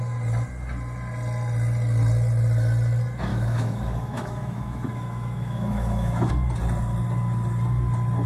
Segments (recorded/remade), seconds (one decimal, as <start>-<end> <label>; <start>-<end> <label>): 0.0-3.3 recorded; 3.3-6.3 remade; 6.3-8.3 recorded